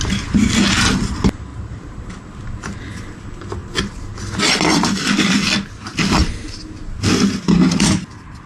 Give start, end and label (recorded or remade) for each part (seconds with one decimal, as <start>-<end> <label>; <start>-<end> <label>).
0.0-0.4 recorded; 0.4-1.0 remade; 1.0-1.5 recorded; 1.5-2.2 remade; 2.2-3.6 recorded; 3.6-4.2 remade; 4.2-8.5 recorded